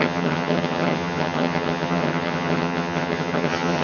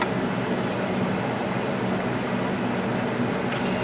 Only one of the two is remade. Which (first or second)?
first